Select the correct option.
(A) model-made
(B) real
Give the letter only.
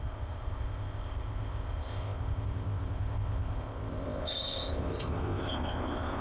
A